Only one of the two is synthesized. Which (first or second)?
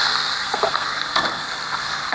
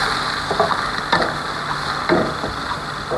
first